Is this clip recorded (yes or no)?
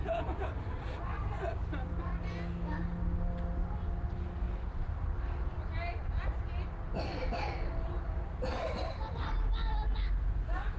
yes